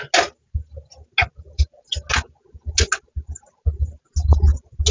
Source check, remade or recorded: recorded